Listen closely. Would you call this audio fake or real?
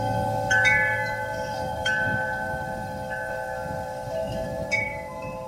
fake